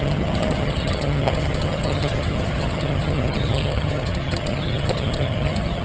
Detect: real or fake fake